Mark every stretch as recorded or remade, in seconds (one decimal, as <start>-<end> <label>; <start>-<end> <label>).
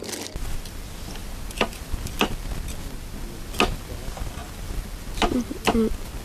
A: 0.0-1.2 recorded; 1.2-2.8 remade; 2.8-6.2 recorded